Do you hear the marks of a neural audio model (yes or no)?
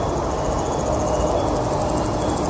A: no